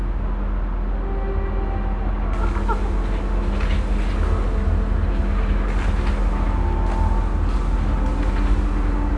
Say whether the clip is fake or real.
real